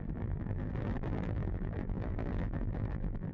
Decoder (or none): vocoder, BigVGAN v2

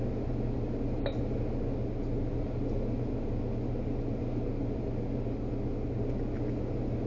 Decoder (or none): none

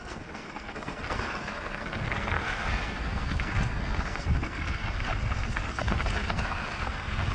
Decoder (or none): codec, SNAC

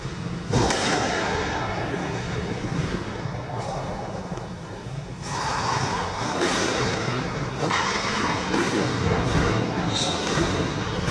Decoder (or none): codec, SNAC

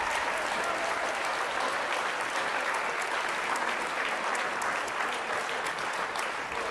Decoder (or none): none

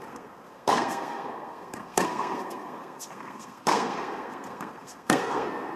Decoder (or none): codec, SNAC